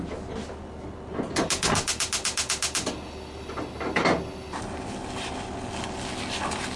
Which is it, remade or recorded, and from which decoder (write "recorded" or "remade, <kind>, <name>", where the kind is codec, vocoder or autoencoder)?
recorded